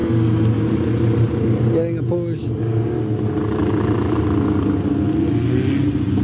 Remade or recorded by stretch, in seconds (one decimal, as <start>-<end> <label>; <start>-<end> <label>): 0.0-6.2 recorded